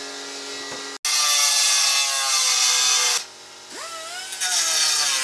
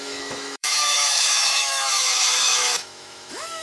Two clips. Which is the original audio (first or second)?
first